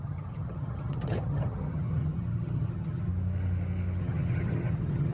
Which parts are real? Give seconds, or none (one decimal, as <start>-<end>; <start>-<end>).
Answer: 3.1-4.0